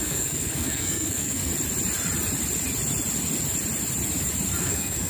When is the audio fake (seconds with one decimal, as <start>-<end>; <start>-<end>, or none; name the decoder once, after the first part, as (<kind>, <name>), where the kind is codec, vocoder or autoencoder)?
0.0-1.5 (codec, SNAC); 4.6-5.1